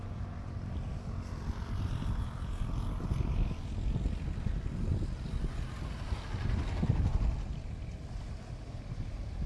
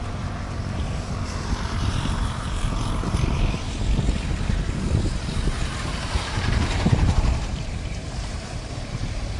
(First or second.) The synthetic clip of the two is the second